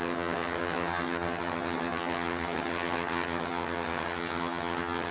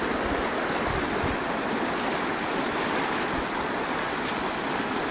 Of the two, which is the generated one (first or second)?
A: first